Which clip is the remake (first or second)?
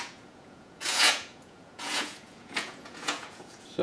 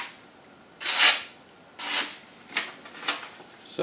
first